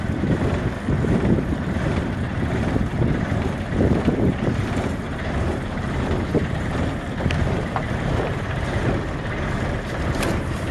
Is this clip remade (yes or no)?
yes